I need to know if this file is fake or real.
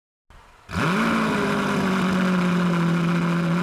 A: real